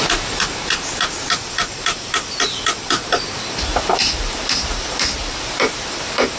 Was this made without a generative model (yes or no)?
no